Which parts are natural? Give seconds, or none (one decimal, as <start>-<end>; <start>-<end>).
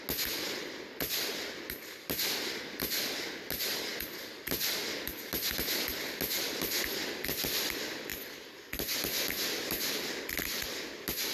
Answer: 0.0-11.3